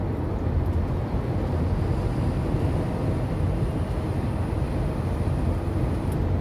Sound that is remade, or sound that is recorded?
recorded